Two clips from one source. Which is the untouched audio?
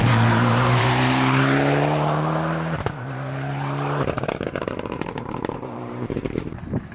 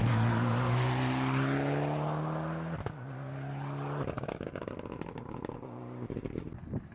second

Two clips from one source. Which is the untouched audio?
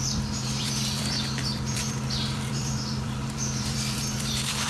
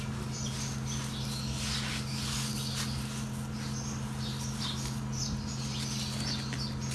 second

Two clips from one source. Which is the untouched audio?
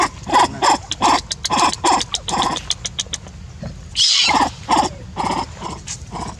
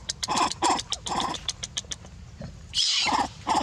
first